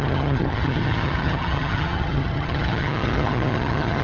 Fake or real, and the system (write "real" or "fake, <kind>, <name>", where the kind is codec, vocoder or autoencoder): fake, vocoder, HiFi-GAN